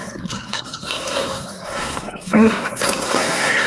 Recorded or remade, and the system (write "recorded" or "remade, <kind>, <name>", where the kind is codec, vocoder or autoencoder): remade, codec, SNAC